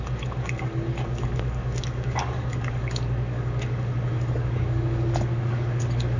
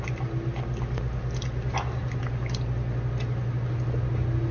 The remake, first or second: first